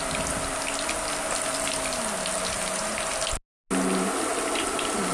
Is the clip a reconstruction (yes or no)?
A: no